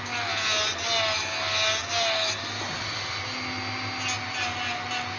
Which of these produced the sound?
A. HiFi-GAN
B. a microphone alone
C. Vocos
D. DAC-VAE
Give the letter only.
B